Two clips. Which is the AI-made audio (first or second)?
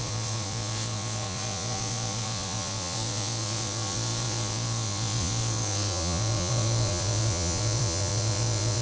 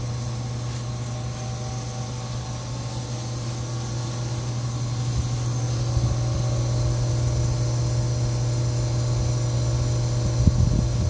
first